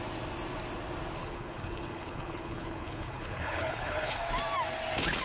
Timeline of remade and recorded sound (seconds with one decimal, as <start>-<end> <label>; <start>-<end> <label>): 0.0-1.2 recorded; 1.2-4.3 remade; 4.3-5.2 recorded